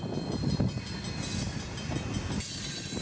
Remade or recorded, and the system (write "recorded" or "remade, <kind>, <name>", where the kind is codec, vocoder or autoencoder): recorded